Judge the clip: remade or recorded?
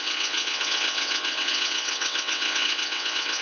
remade